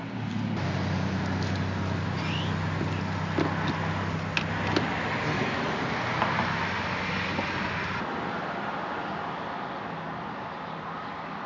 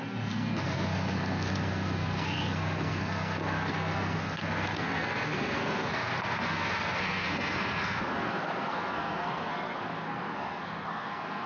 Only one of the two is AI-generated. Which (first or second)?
second